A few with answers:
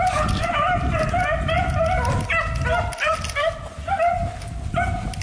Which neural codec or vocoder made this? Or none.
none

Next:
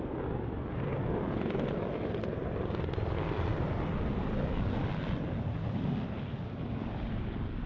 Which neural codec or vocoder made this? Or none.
none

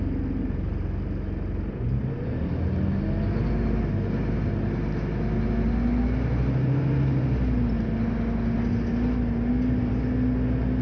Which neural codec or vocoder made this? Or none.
none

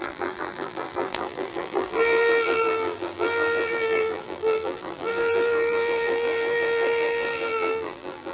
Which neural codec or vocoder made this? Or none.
vocoder, BigVGAN v2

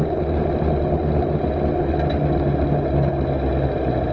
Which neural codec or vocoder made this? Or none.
none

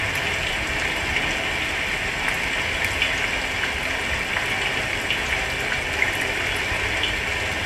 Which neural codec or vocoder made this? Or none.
none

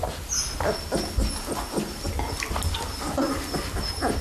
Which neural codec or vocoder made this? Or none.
none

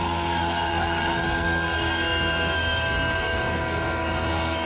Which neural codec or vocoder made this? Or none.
codec, SNAC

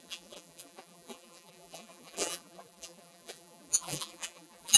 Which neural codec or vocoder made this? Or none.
vocoder, BigVGAN v2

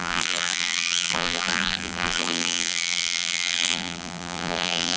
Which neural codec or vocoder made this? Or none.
vocoder, BigVGAN v2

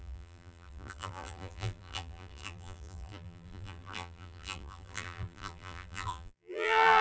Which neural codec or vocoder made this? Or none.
vocoder, BigVGAN v2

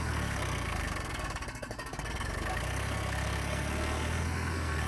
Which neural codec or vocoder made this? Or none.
codec, SNAC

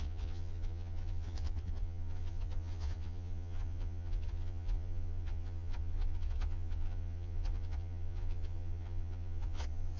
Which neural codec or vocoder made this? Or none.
vocoder, Vocos